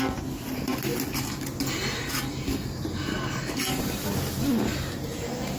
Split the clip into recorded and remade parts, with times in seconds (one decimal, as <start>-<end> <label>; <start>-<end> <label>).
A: 0.0-5.6 recorded